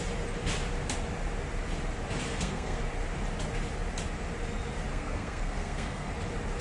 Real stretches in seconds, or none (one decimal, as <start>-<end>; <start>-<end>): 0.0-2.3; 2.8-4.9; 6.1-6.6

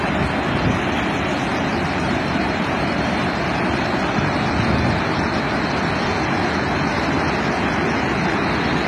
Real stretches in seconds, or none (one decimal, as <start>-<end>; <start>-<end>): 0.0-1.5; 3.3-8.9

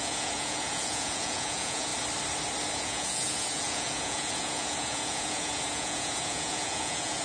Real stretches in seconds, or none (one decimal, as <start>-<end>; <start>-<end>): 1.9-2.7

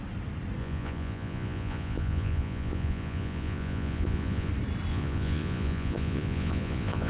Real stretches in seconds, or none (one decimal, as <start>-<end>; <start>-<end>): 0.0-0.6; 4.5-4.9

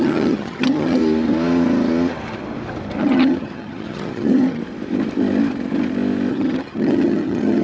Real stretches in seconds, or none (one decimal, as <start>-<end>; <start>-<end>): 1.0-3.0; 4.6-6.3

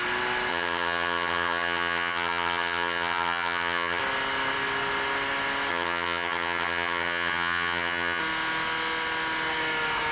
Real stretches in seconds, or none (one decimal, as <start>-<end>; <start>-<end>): 0.0-0.5; 4.0-5.7; 8.2-10.1

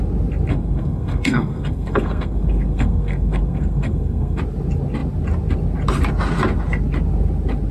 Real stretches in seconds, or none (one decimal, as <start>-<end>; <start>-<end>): 0.0-0.5; 4.4-7.7

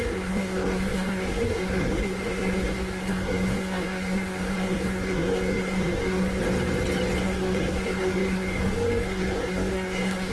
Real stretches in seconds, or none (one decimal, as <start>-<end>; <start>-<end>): 6.4-7.2